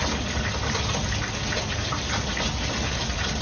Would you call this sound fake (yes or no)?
no